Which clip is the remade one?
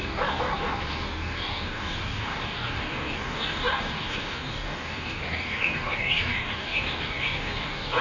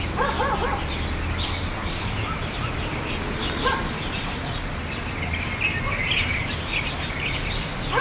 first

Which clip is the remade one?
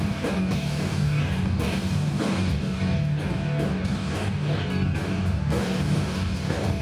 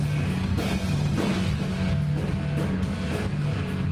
first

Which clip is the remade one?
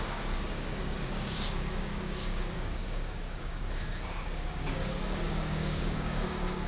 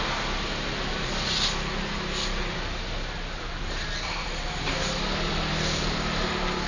first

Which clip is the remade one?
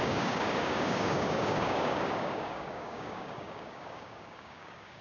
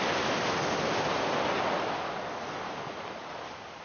first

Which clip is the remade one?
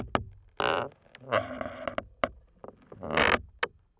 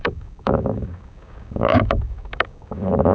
second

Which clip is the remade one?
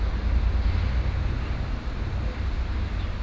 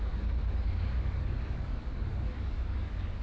second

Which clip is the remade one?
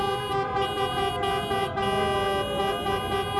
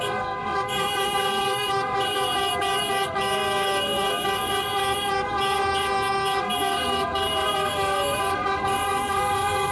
second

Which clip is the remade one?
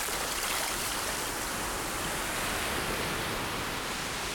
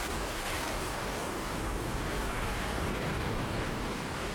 second